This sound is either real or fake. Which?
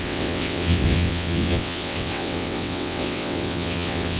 fake